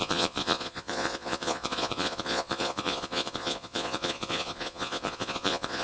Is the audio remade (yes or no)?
yes